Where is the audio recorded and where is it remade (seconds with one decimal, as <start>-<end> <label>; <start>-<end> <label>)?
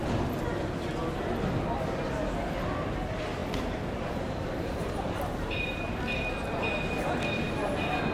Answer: 0.0-3.4 recorded; 3.4-6.3 remade; 6.3-8.1 recorded